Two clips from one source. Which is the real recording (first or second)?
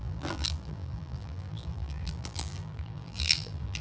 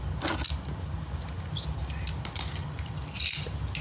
second